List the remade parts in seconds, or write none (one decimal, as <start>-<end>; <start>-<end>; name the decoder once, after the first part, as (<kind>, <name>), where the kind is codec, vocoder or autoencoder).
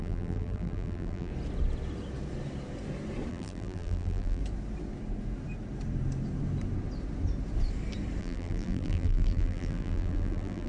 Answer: 0.0-1.3 (vocoder, BigVGAN v2); 3.3-4.4; 8.2-10.7